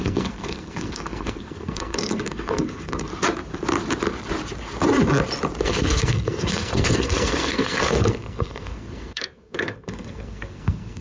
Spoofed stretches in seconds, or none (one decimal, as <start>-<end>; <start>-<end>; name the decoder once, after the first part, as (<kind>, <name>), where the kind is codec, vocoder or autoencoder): 0.0-3.1 (codec, SNAC); 5.6-11.0